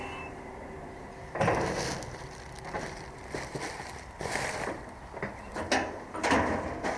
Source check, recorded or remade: remade